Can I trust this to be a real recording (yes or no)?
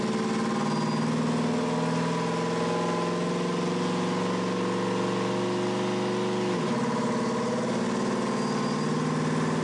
yes